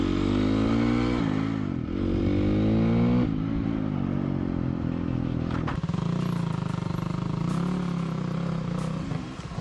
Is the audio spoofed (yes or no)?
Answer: no